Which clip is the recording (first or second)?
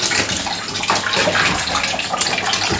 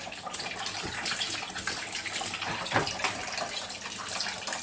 first